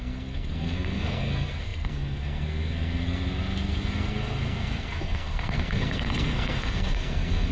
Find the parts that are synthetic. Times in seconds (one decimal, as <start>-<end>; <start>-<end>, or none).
0.0-7.5